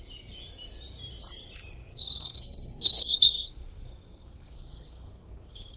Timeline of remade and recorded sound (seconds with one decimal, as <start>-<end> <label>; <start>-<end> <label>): 0.0-2.0 recorded; 2.0-5.8 remade